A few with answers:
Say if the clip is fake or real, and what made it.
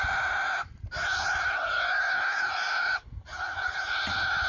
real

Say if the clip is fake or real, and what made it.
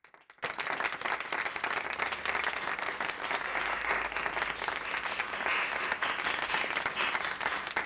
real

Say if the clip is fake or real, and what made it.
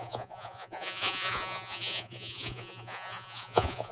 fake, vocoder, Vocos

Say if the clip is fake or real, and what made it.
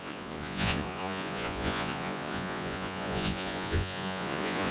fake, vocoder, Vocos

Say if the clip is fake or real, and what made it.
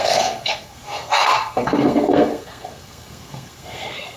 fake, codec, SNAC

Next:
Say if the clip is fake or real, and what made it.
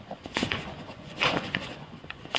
fake, vocoder, Vocos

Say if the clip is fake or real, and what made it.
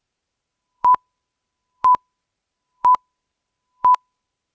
fake, vocoder, BigVGAN v2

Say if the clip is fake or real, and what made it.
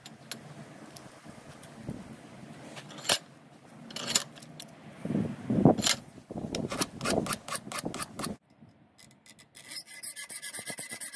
real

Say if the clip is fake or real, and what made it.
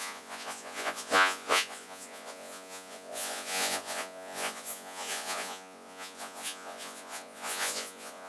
fake, vocoder, Vocos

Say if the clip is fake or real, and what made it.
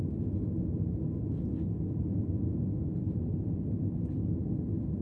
real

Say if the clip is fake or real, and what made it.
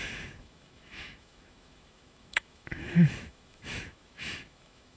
fake, autoencoder, DAC-VAE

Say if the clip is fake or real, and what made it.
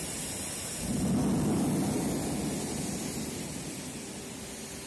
real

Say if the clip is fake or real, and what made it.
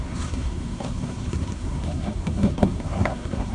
fake, codec, SNAC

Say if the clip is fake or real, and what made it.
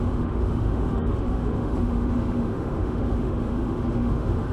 fake, autoencoder, DAC-VAE